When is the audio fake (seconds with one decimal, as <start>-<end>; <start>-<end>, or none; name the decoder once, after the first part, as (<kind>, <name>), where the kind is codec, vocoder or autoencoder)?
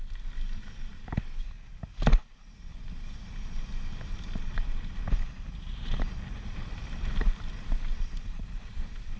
none